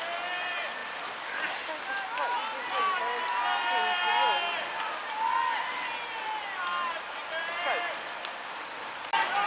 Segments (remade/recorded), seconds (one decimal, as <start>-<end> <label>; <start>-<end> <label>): 0.0-9.5 recorded